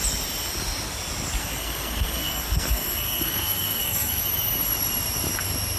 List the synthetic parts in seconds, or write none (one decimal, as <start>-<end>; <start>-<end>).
1.4-4.2